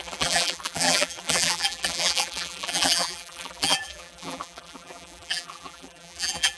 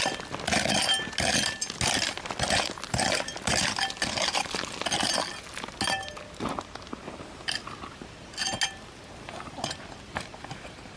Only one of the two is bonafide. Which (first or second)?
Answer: second